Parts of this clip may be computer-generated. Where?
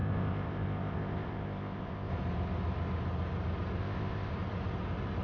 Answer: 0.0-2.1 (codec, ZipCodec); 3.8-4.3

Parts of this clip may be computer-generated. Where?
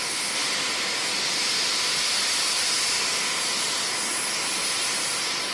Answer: 0.4-3.2 (vocoder, BigVGAN v2)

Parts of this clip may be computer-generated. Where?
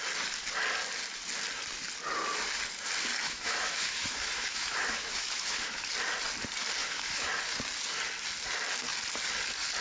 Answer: 3.1-5.9 (autoencoder, DAC-VAE); 6.8-7.3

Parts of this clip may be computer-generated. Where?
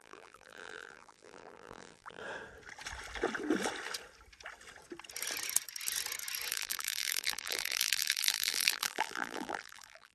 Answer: 0.0-2.2 (vocoder, BigVGAN v2); 6.5-10.1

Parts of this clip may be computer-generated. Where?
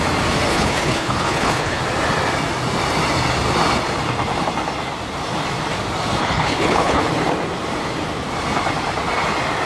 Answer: 0.5-1.8 (codec, HILCodec); 6.2-7.0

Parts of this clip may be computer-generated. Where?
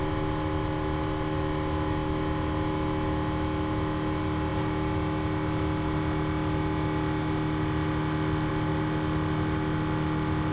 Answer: none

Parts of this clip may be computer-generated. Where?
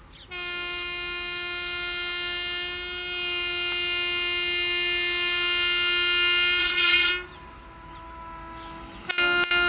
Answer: 6.6-7.1 (vocoder, Vocos)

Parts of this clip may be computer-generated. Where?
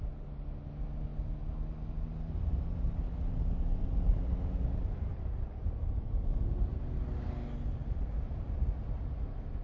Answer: 5.1-6.8 (vocoder, BigVGAN v2); 7.8-8.8